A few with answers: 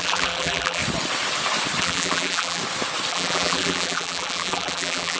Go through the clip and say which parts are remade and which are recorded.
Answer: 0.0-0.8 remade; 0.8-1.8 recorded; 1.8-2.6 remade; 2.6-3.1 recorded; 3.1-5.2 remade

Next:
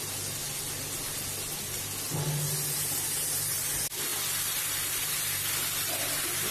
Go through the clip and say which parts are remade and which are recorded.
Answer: 0.0-6.5 recorded

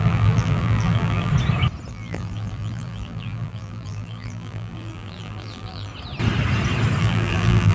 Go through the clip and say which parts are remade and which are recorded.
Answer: 0.0-1.3 remade; 1.3-1.9 recorded; 1.9-5.9 remade; 5.9-7.0 recorded; 7.0-7.7 remade

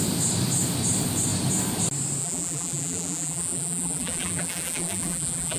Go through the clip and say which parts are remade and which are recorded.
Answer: 0.0-2.2 recorded; 2.2-5.6 remade

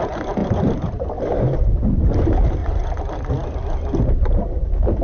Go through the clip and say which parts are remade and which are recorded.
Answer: 0.0-2.6 remade; 2.6-4.0 recorded; 4.0-5.0 remade

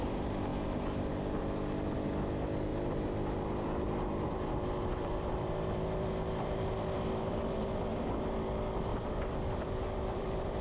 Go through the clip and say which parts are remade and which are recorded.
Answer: 0.0-2.7 recorded; 2.7-7.9 remade; 7.9-8.9 recorded; 8.9-10.6 remade

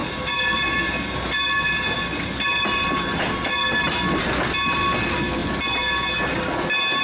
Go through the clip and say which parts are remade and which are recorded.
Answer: 0.0-7.0 recorded